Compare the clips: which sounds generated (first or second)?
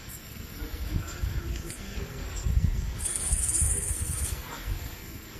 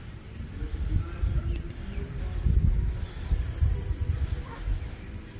first